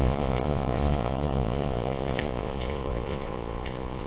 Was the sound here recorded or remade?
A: remade